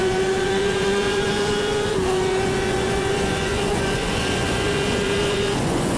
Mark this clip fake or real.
fake